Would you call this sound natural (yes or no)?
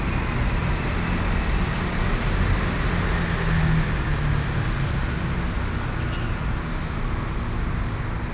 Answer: yes